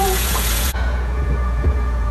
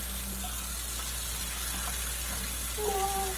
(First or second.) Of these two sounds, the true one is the second